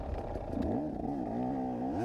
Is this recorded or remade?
recorded